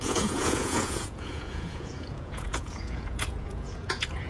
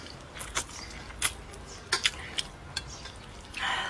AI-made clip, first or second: first